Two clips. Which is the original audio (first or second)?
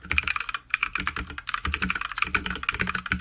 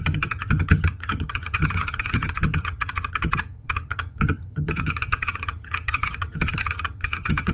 first